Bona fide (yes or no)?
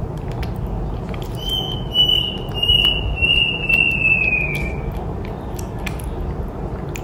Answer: yes